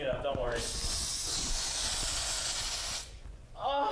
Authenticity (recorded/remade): remade